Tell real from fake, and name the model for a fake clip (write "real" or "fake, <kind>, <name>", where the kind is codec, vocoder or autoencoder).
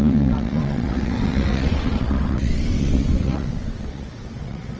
fake, vocoder, WaveNeXt